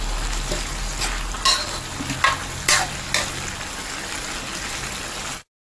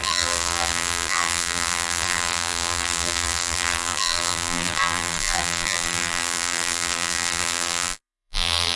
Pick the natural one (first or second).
first